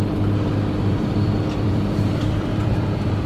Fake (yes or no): yes